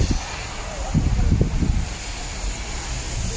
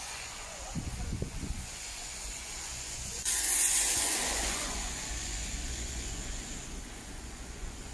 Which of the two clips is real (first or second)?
first